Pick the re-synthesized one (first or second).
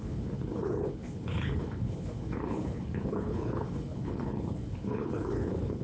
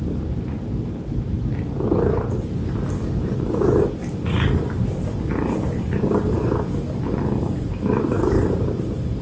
first